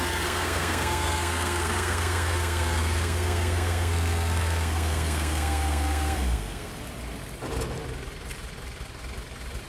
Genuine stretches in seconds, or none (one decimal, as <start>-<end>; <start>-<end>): 6.7-9.7